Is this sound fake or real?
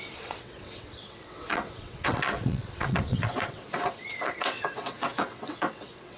fake